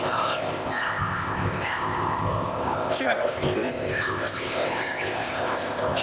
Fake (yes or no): yes